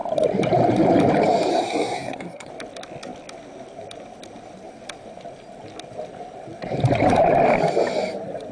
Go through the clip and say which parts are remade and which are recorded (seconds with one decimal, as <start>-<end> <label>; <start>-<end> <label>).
0.0-1.5 recorded; 1.5-2.5 remade; 2.5-8.5 recorded